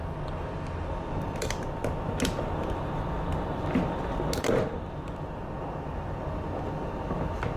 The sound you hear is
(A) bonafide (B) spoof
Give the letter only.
A